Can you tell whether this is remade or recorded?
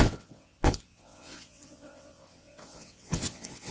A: remade